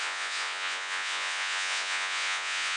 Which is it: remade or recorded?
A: remade